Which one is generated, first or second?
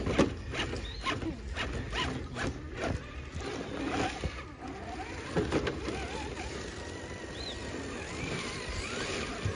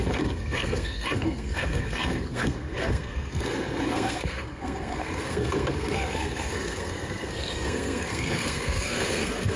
second